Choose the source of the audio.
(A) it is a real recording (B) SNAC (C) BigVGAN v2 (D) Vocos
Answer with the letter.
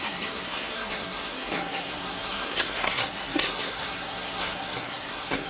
B